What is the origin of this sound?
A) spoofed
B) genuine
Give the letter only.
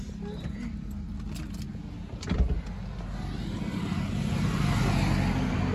B